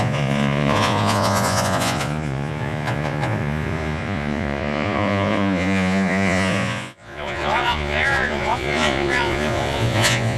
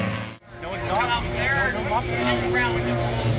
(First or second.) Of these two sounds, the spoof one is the first